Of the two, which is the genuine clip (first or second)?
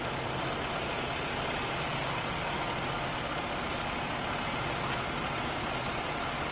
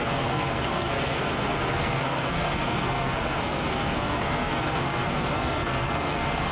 first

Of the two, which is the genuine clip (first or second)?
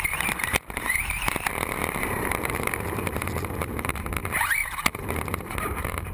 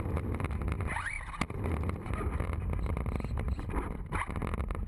second